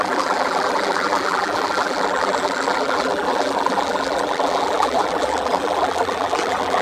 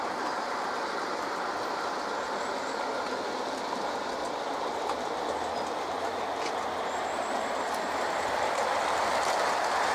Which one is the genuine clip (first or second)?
second